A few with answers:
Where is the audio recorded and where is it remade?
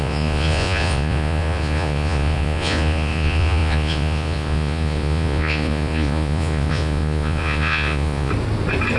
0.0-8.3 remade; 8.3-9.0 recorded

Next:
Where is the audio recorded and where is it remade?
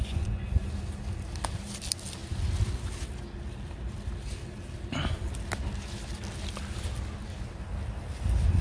0.0-0.6 remade; 0.6-8.6 recorded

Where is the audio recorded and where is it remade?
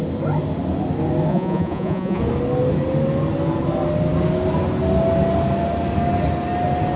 0.0-1.3 recorded; 1.3-2.2 remade; 2.2-7.0 recorded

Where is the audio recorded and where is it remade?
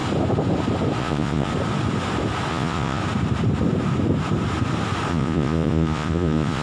0.0-1.0 recorded; 1.0-1.5 remade; 1.5-2.5 recorded; 2.5-3.0 remade; 3.0-5.1 recorded; 5.1-6.6 remade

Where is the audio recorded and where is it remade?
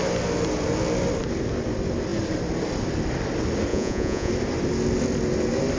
0.0-3.7 recorded; 3.7-4.3 remade; 4.3-5.8 recorded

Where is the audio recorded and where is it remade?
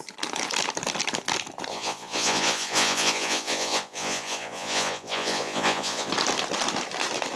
0.0-1.7 recorded; 1.7-6.1 remade; 6.1-7.4 recorded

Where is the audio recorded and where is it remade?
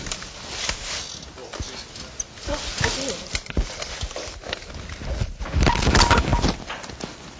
0.0-7.4 recorded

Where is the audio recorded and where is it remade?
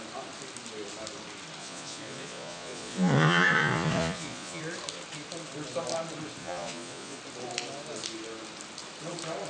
0.0-1.6 recorded; 1.6-4.6 remade; 4.6-6.4 recorded; 6.4-7.2 remade; 7.2-9.5 recorded